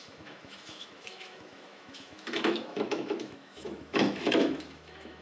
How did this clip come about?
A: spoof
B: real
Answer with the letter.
A